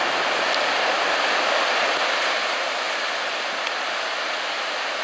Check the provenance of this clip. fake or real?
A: real